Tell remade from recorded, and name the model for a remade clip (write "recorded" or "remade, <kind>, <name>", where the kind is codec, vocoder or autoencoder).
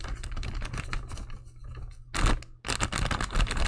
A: recorded